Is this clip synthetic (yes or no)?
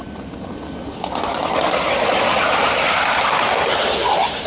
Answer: no